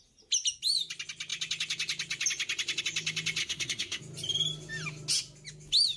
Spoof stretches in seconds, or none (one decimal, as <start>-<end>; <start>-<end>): 3.4-4.0